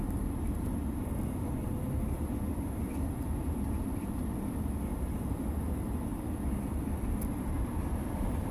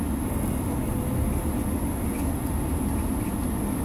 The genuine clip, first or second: second